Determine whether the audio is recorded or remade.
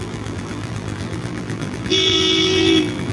remade